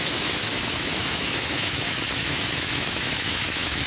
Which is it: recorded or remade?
remade